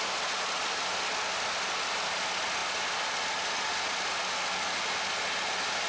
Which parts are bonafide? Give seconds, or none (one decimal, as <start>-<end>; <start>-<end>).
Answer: 0.0-5.9